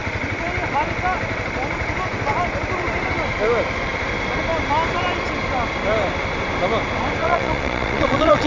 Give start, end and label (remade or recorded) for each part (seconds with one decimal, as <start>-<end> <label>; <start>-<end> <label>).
0.0-7.2 recorded; 7.2-8.5 remade